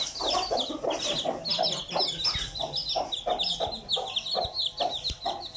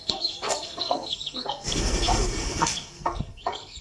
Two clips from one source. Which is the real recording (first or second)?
first